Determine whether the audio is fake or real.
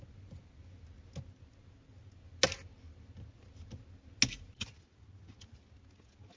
real